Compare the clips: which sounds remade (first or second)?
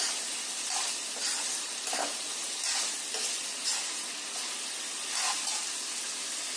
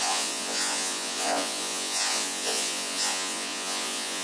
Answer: second